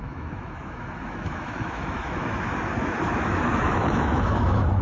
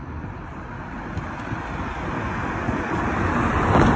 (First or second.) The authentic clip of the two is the second